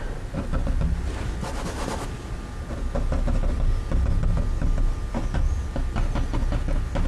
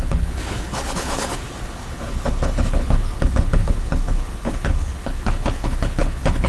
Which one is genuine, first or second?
first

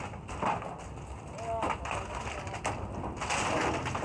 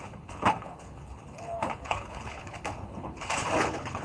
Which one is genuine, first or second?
first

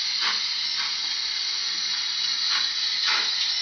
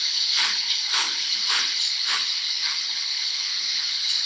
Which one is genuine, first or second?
first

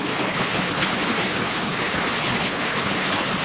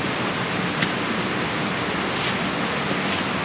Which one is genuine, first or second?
second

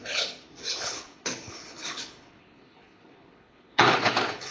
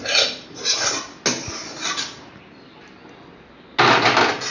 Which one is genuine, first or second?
second